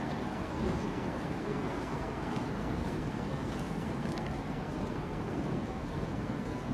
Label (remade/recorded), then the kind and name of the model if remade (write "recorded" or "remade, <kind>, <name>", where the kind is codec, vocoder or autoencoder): remade, codec, SNAC